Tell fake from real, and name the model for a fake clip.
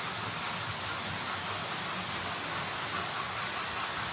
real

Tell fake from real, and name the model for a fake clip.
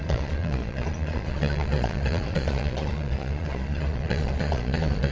fake, vocoder, Vocos